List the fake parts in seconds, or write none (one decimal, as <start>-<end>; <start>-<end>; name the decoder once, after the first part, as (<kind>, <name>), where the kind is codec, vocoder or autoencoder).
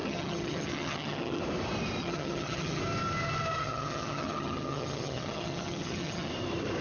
0.0-1.4 (vocoder, HiFi-GAN); 2.0-2.8; 3.6-6.3